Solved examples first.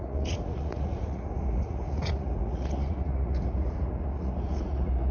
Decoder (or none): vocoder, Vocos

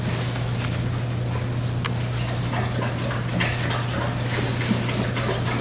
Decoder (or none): none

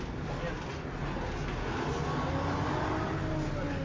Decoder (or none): none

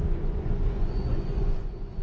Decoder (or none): vocoder, Vocos